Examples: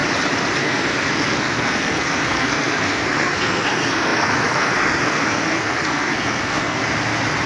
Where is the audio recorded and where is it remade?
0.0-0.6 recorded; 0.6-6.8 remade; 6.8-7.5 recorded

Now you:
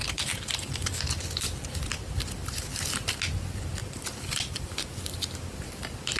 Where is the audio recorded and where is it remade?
0.0-0.9 remade; 0.9-3.8 recorded; 3.8-4.7 remade; 4.7-6.2 recorded

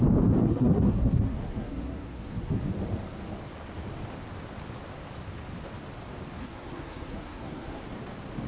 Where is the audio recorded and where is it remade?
0.0-0.4 recorded; 0.4-2.6 remade; 2.6-6.4 recorded; 6.4-7.8 remade; 7.8-8.5 recorded

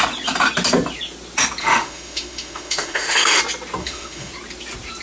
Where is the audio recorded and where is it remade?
0.0-1.6 recorded; 1.6-3.4 remade; 3.4-3.8 recorded; 3.8-4.3 remade; 4.3-5.0 recorded

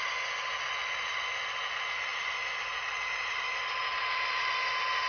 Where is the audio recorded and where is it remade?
0.0-5.1 recorded

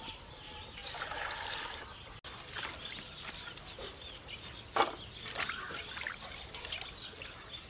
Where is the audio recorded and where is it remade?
0.0-0.8 remade; 0.8-3.4 recorded; 3.4-3.8 remade; 3.8-7.1 recorded; 7.1-7.7 remade